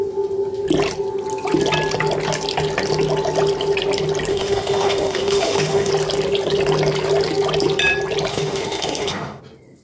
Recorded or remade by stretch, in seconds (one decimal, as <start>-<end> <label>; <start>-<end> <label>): 0.0-4.3 recorded; 4.3-5.9 remade; 5.9-8.3 recorded; 8.3-9.4 remade; 9.4-9.8 recorded